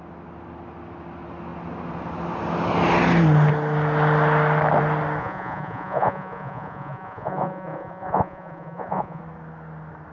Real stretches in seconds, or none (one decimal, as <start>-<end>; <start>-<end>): 0.0-5.2; 9.2-10.1